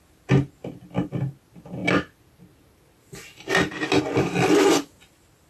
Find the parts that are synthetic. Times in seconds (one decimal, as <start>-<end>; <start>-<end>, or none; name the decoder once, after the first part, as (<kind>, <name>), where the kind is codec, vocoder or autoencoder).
none